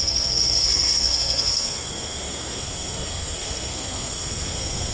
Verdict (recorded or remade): remade